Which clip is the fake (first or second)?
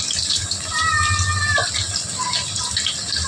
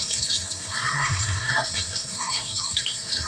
second